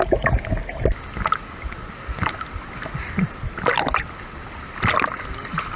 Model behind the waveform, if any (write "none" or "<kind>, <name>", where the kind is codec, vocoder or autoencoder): none